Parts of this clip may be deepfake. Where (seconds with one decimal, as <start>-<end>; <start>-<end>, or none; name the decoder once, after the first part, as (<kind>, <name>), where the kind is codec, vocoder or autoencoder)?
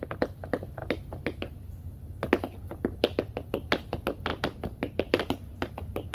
0.8-2.3 (vocoder, BigVGAN v2); 4.3-6.1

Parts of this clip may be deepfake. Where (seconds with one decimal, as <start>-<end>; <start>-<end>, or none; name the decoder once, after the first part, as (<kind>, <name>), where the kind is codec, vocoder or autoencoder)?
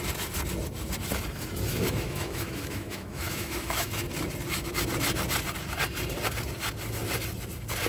1.7-3.9 (autoencoder, DAC-VAE)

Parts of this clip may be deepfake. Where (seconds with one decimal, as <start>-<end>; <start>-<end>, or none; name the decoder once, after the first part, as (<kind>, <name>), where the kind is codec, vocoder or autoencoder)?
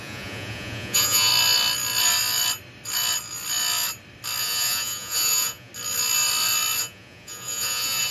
0.0-1.3 (vocoder, Vocos); 4.4-5.7; 6.8-8.1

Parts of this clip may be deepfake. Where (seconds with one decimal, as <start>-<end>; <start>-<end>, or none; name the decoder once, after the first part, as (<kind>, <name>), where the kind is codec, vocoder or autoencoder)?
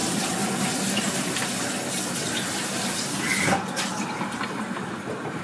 none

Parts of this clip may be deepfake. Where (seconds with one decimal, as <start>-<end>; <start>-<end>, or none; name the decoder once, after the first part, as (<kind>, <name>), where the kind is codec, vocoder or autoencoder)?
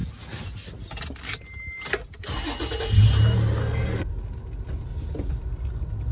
3.6-4.1 (codec, SNAC)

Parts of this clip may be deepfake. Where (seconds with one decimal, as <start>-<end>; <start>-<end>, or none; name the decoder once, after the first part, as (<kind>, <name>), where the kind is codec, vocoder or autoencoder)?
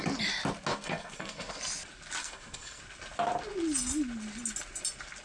0.7-1.6 (codec, SNAC); 2.2-2.8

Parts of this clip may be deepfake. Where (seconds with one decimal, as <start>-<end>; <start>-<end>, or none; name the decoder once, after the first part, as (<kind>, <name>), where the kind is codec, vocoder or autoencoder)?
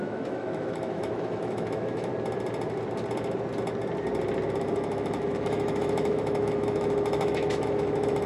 0.0-2.1 (autoencoder, DAC-VAE); 4.6-8.3